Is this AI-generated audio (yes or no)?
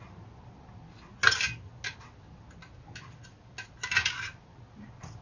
no